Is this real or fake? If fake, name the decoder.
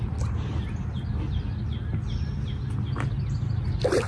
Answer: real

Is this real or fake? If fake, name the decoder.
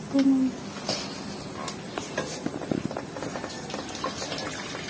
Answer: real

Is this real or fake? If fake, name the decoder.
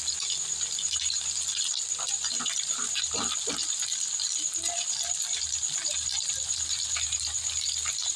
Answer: real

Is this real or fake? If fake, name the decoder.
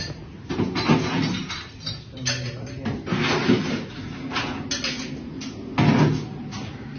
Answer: real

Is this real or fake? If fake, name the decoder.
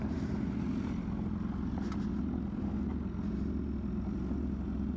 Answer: real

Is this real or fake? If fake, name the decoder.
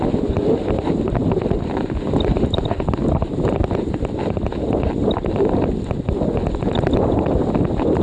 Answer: real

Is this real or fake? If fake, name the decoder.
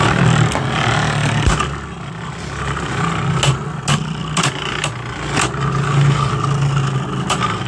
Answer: real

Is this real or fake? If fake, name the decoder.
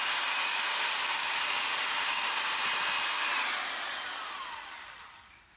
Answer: real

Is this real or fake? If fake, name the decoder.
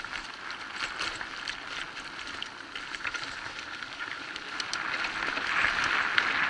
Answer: real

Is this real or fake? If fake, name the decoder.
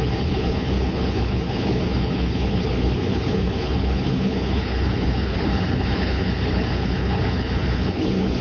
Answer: fake, codec, HILCodec